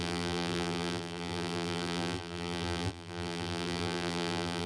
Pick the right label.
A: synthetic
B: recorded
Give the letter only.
A